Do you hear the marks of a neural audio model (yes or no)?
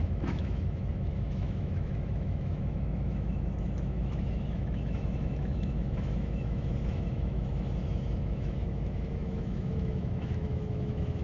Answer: yes